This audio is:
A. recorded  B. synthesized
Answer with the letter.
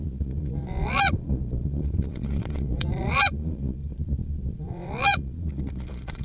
B